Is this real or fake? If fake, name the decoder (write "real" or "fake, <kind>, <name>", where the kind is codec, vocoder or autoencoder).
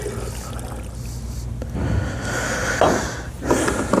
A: real